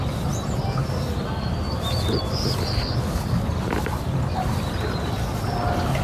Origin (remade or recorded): recorded